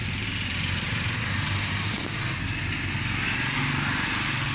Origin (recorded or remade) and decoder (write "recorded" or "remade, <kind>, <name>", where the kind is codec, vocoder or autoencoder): recorded